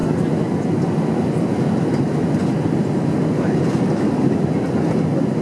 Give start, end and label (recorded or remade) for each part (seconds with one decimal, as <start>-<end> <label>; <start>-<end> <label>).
0.0-5.4 recorded